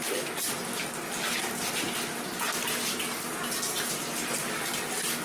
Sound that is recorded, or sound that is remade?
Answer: recorded